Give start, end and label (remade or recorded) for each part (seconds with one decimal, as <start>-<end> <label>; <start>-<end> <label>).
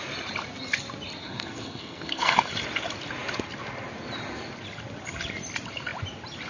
0.0-1.2 recorded; 1.2-2.5 remade; 2.5-6.5 recorded